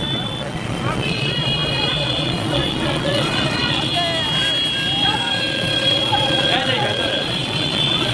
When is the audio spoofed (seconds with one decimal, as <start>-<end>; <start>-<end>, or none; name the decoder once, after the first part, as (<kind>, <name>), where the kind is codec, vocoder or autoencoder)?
0.0-3.9 (vocoder, Vocos); 5.0-8.1